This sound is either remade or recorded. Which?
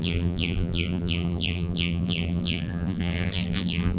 remade